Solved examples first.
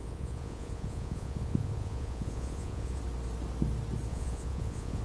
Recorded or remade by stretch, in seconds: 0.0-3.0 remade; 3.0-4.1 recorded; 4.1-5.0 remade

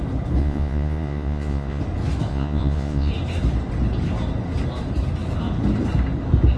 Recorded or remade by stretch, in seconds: 0.0-0.4 recorded; 0.4-1.8 remade; 1.8-2.3 recorded; 2.3-3.1 remade; 3.1-6.6 recorded